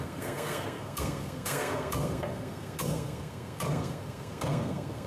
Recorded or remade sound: remade